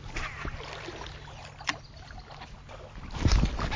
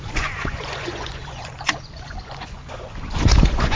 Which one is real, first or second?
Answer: first